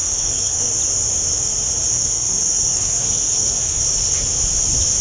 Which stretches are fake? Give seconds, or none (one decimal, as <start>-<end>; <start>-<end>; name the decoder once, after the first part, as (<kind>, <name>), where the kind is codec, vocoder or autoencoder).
0.0-0.7 (codec, SNAC); 1.9-3.8